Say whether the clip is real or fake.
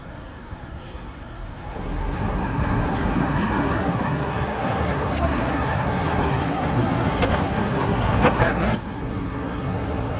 fake